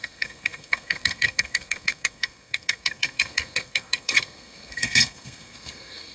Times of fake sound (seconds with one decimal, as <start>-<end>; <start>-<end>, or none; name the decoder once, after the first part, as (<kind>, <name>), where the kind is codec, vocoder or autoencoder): 0.0-6.1 (codec, SNAC)